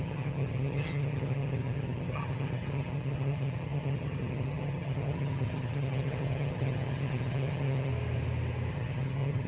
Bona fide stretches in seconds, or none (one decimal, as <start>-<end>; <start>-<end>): 7.9-8.7